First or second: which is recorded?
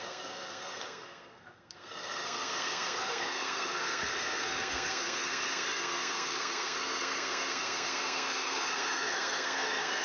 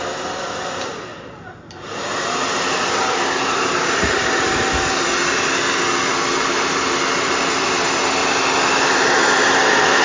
second